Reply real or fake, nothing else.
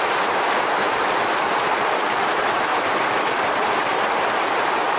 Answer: real